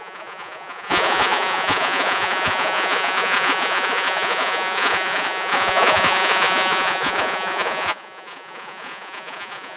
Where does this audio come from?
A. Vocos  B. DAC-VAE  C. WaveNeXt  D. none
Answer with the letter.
A